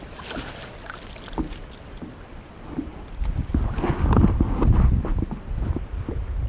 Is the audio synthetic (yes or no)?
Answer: no